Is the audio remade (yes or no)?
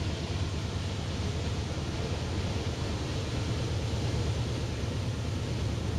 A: no